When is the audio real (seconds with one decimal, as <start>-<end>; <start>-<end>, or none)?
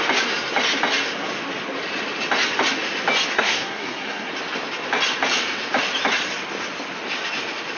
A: 0.0-3.3; 4.3-7.8